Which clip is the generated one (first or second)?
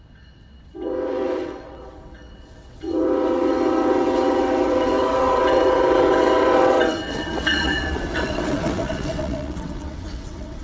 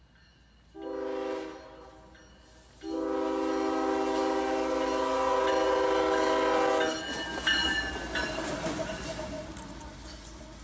first